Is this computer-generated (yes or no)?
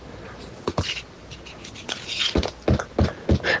no